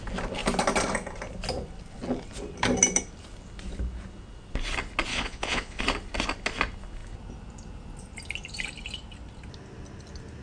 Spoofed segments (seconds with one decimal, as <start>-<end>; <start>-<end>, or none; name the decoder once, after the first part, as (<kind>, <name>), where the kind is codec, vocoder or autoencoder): 5.1-5.8 (vocoder, Vocos)